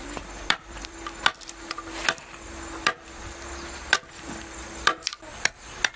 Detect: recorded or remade remade